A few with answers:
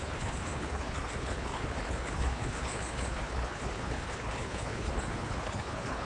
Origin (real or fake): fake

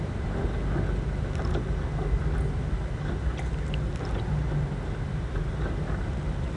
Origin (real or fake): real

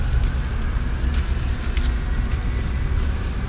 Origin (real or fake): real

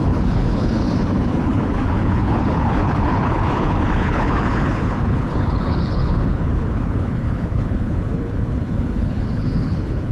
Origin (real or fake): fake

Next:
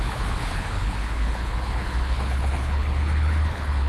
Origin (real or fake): fake